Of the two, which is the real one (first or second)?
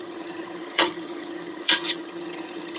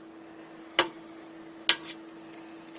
second